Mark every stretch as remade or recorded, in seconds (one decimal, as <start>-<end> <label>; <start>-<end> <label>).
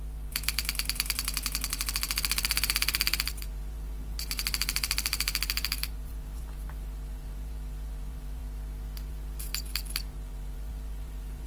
0.0-8.4 remade; 8.4-9.1 recorded; 9.1-11.5 remade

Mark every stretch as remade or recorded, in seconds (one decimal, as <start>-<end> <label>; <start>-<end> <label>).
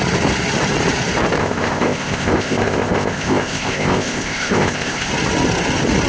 0.0-1.4 recorded; 1.4-5.1 remade; 5.1-6.1 recorded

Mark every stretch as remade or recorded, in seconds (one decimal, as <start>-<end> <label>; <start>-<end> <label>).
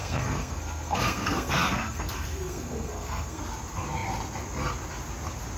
0.0-3.4 remade; 3.4-5.6 recorded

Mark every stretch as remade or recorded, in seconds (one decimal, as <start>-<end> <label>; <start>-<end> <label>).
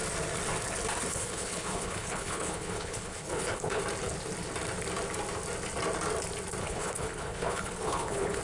0.0-1.1 recorded; 1.1-3.8 remade; 3.8-6.6 recorded; 6.6-8.4 remade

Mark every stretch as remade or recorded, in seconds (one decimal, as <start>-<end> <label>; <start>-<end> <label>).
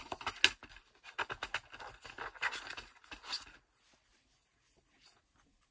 0.0-5.7 recorded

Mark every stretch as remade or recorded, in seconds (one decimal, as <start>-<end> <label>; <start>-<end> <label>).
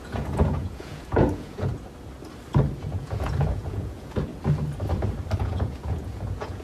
0.0-1.7 remade; 1.7-2.8 recorded; 2.8-4.3 remade; 4.3-5.4 recorded; 5.4-6.6 remade